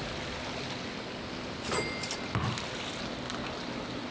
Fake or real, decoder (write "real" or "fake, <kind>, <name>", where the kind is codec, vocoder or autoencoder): real